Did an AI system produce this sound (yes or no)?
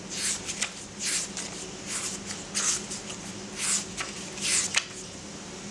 no